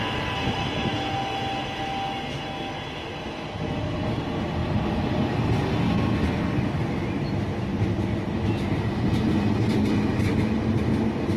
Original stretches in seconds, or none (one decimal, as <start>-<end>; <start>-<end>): 0.0-11.4